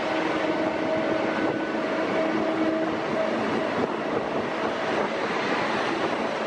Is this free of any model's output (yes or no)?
yes